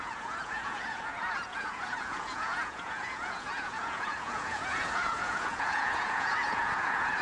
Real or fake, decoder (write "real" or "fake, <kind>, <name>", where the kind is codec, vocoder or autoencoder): fake, vocoder, Vocos